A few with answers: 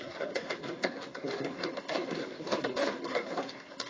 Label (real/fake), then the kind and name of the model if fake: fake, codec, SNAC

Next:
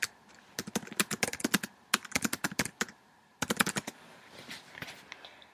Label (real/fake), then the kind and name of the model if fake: real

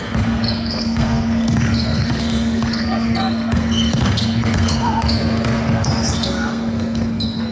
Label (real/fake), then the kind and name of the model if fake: fake, codec, SNAC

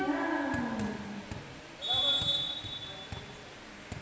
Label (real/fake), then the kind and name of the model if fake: real